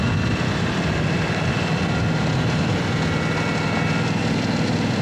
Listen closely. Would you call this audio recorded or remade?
recorded